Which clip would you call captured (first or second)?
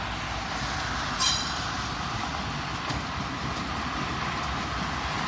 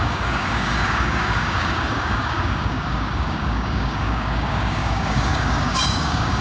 first